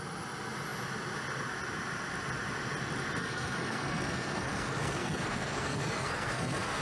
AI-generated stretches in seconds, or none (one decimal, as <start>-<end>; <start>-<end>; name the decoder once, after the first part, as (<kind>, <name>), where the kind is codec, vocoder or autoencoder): 3.2-6.8 (codec, SNAC)